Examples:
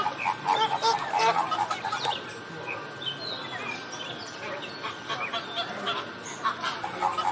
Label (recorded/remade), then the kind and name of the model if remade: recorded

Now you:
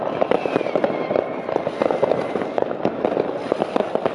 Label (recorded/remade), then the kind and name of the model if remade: recorded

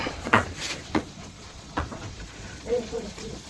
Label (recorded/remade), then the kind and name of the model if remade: remade, vocoder, Vocos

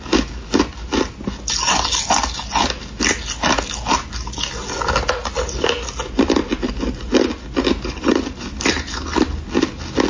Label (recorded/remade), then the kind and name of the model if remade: recorded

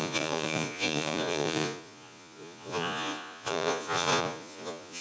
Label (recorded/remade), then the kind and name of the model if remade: remade, vocoder, Vocos